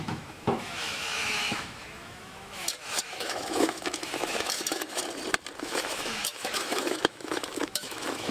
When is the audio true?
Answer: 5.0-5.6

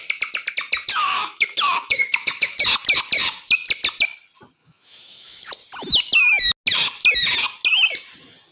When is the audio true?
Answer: 0.0-0.9; 2.6-4.6; 5.5-8.5

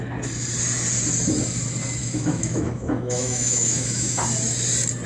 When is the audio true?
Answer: 0.0-2.0; 4.2-5.1

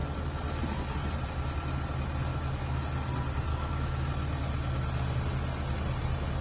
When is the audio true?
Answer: 0.0-2.3; 2.8-3.5; 4.1-6.4

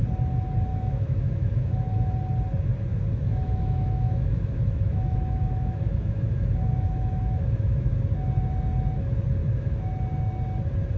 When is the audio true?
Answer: 0.0-0.7; 2.1-2.9; 7.9-9.4; 9.9-11.0

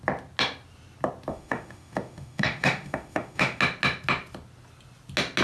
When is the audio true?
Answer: 0.0-1.3; 3.6-5.4

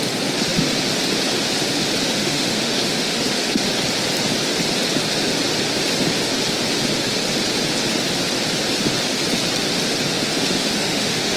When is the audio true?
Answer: 0.0-2.2; 3.6-10.1

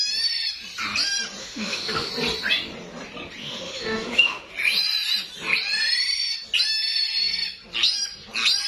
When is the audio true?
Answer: 0.0-1.4; 2.1-3.4; 4.5-8.7